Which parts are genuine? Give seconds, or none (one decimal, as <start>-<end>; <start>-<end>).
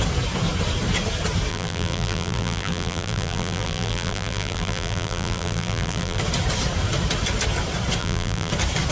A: 0.0-1.5; 6.2-8.0; 8.5-8.9